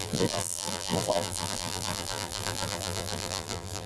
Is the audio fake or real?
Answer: fake